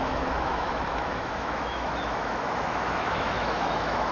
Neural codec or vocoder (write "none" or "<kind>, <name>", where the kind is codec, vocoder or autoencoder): autoencoder, DAC-VAE